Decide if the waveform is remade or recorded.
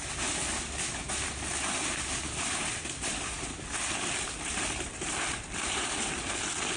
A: recorded